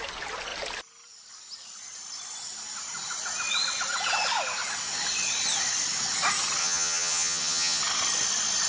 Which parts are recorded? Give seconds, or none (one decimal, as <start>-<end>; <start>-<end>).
0.0-6.6; 7.8-8.7